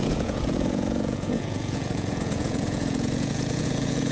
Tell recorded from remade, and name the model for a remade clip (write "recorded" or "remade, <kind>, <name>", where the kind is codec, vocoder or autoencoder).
remade, vocoder, Vocos